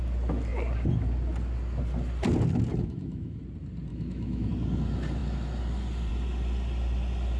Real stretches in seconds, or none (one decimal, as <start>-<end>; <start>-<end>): 0.0-2.7; 3.4-3.9; 4.5-7.4